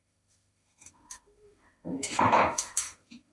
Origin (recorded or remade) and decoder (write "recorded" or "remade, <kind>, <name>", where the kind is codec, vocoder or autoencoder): remade, autoencoder, DAC-VAE